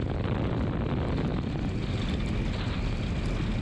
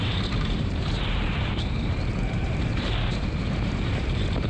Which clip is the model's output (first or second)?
second